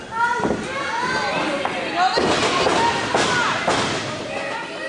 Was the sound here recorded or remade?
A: recorded